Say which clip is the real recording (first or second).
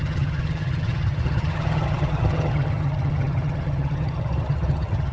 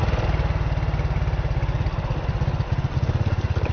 second